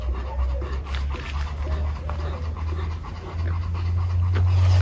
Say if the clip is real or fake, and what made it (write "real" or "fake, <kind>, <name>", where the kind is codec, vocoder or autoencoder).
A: real